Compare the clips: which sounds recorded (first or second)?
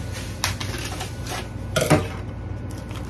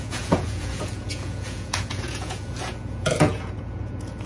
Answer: first